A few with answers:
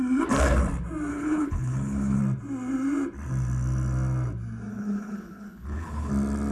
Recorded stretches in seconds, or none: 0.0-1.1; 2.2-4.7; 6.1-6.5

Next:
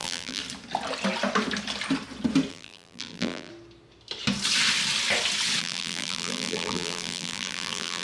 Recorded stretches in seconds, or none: 0.4-2.5; 3.5-5.6